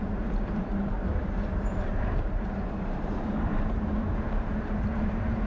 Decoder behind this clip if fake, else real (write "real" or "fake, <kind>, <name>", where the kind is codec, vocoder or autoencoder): fake, vocoder, BigVGAN v2